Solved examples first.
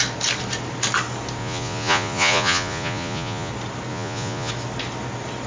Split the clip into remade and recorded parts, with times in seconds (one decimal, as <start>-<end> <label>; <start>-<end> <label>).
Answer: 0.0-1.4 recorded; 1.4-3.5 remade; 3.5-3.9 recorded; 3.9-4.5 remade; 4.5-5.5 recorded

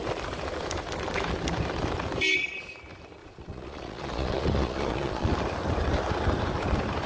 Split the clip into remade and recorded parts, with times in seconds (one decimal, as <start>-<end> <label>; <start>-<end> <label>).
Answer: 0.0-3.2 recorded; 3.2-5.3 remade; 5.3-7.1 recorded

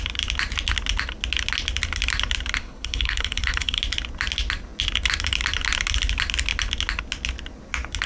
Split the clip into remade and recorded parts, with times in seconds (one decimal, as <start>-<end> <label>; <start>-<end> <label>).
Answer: 0.0-2.6 recorded; 2.6-3.8 remade; 3.8-8.1 recorded

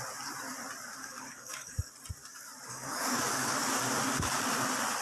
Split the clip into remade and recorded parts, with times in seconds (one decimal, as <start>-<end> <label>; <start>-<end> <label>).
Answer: 0.0-1.0 recorded; 1.0-1.9 remade; 1.9-2.7 recorded; 2.7-3.7 remade; 3.7-5.0 recorded

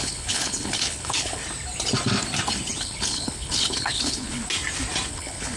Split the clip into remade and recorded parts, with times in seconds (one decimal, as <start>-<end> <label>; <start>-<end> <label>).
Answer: 0.0-1.4 remade; 1.4-2.8 recorded; 2.8-4.4 remade; 4.4-5.1 recorded; 5.1-5.6 remade

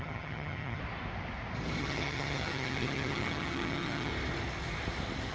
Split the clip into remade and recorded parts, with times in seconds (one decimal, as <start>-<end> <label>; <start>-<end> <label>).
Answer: 0.0-0.8 remade; 0.8-1.8 recorded; 1.8-4.1 remade; 4.1-5.3 recorded